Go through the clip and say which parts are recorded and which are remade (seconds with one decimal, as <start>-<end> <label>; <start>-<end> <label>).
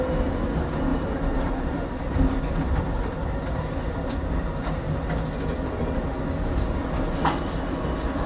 0.0-0.9 recorded; 0.9-3.0 remade; 3.0-8.3 recorded